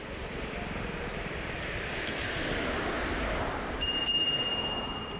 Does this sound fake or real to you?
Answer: real